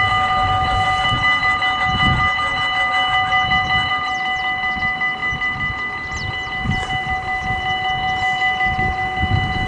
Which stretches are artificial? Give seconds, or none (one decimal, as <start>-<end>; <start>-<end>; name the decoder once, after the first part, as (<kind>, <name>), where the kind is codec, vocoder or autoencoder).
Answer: none